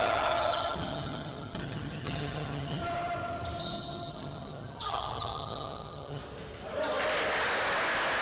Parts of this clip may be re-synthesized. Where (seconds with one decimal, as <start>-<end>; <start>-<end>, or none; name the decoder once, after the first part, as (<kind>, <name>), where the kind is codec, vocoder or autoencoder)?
0.0-2.8 (vocoder, HiFi-GAN); 3.6-6.2